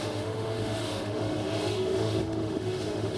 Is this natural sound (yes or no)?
no